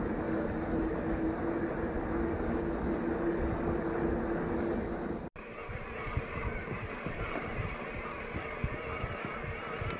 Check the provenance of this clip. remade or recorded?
recorded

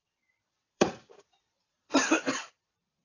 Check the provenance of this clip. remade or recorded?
remade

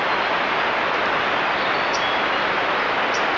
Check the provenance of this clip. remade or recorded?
recorded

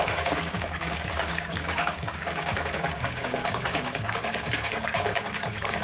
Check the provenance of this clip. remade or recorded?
remade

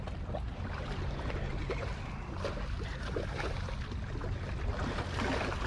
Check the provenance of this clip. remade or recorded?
recorded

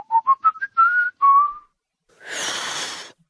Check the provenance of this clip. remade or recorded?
remade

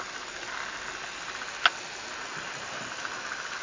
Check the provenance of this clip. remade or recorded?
recorded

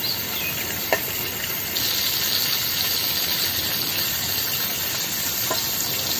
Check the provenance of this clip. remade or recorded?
recorded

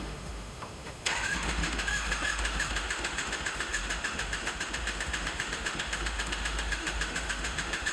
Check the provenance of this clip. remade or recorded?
remade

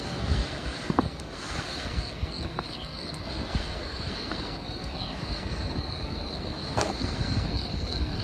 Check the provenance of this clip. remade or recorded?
remade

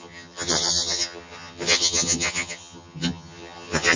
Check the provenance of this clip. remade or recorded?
remade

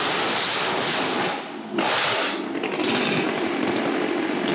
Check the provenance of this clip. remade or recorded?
recorded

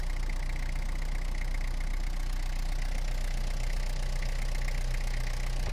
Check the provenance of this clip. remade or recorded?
recorded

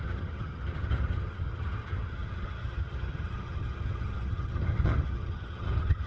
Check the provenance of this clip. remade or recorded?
remade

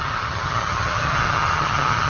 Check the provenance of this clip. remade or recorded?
remade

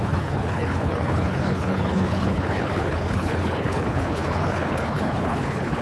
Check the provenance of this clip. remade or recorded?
remade